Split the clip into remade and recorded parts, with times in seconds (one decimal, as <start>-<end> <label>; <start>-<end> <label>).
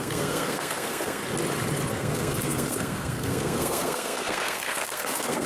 0.0-1.2 remade; 1.2-1.9 recorded; 1.9-5.5 remade